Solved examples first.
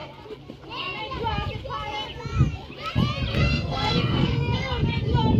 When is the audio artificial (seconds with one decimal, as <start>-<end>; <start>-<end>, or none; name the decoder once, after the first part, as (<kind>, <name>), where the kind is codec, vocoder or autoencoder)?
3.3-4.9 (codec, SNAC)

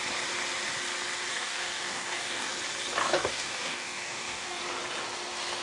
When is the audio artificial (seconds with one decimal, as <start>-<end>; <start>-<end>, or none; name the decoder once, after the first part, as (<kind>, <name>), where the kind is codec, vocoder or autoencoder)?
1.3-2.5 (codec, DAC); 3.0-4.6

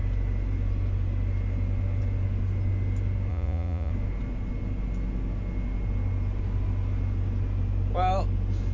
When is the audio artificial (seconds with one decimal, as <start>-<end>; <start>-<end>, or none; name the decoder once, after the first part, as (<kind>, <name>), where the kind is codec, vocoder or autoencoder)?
3.3-3.9 (vocoder, Vocos)

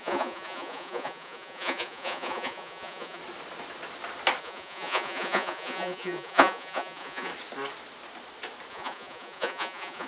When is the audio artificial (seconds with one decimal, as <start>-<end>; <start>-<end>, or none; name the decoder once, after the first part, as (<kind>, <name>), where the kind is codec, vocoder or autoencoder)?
0.0-3.2 (vocoder, Vocos); 4.4-7.3; 8.7-10.1